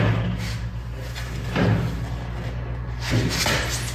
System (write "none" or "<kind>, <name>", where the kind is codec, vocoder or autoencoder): none